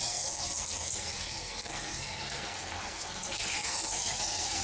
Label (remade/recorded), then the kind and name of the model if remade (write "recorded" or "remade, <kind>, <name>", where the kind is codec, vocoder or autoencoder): remade, codec, SNAC